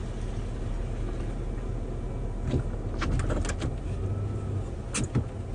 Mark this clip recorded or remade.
recorded